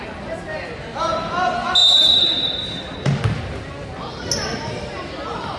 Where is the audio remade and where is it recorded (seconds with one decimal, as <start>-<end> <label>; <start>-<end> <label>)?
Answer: 0.0-5.6 recorded